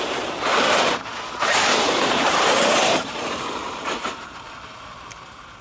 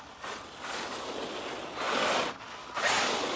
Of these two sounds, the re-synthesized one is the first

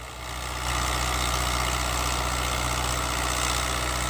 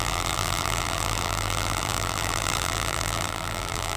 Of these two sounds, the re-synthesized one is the second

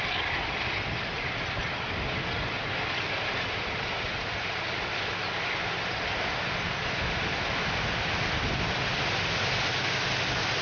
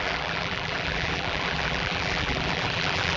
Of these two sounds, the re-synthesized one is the second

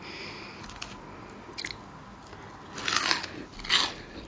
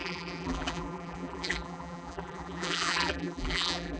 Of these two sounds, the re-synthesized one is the second